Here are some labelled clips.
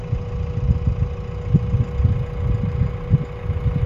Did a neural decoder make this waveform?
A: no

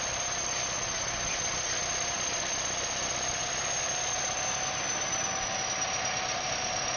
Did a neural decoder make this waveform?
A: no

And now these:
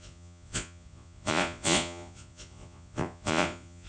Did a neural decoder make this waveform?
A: yes